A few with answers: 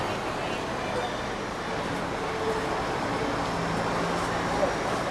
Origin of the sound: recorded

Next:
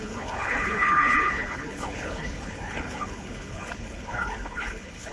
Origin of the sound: remade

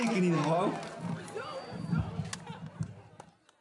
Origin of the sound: recorded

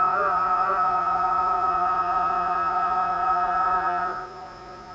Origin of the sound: remade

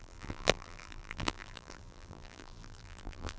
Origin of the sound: remade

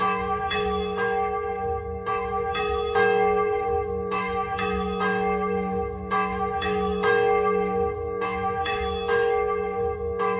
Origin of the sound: remade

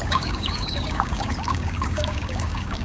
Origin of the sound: remade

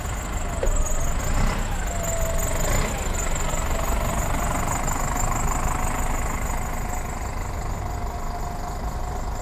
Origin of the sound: recorded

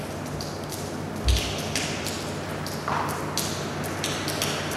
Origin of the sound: recorded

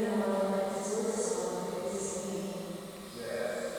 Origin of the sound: recorded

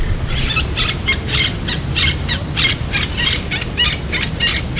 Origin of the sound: recorded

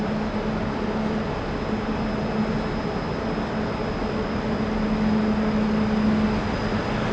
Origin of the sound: recorded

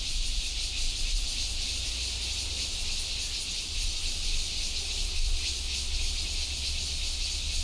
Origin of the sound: recorded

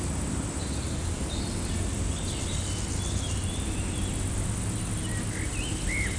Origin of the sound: recorded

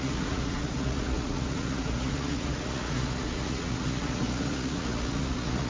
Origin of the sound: remade